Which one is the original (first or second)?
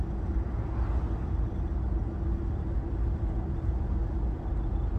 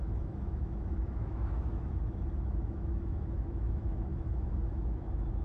first